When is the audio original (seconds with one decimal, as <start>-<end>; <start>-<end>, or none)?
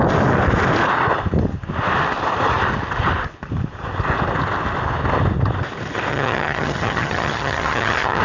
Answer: 0.0-6.1